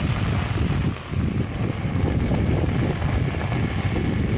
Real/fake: real